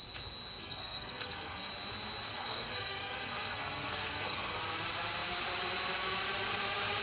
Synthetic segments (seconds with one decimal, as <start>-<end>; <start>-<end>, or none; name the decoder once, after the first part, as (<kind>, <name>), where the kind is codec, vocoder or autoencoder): 0.6-1.7 (codec, SNAC); 2.3-4.6